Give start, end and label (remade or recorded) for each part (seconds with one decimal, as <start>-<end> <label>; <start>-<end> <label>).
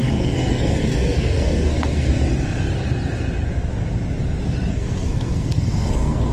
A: 0.0-2.1 remade; 2.1-4.7 recorded; 4.7-6.3 remade